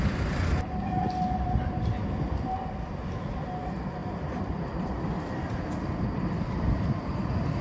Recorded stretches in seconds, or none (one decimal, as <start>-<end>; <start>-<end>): 0.0-4.0; 7.1-7.6